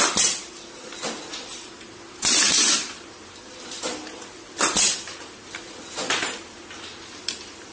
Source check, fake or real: real